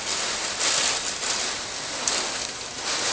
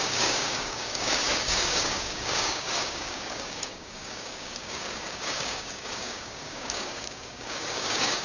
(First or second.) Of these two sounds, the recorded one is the first